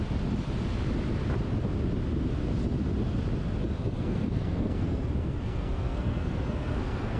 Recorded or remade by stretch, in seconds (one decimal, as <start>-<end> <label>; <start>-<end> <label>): 0.0-3.8 recorded; 3.8-7.2 remade

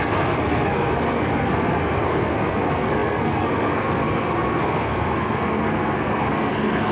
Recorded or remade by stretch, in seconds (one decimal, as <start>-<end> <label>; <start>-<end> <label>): 0.0-6.9 remade

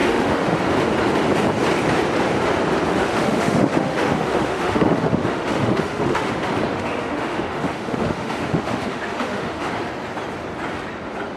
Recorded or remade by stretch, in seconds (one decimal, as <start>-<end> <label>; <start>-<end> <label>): 0.0-0.6 remade; 0.6-2.9 recorded; 2.9-6.3 remade; 6.3-6.7 recorded; 6.7-9.7 remade; 9.7-11.4 recorded

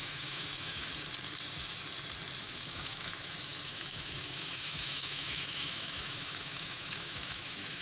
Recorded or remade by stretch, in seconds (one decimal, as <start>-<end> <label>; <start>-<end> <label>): 0.0-0.9 remade; 0.9-2.4 recorded; 2.4-7.8 remade

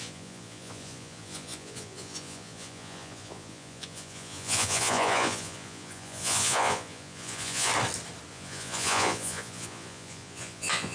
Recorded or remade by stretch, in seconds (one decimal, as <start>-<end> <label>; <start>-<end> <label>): 0.0-7.7 remade; 7.7-8.3 recorded; 8.3-10.9 remade

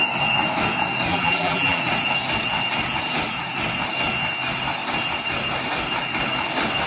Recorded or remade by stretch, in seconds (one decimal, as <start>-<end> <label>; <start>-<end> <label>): 0.0-1.1 recorded; 1.1-1.8 remade; 1.8-6.9 recorded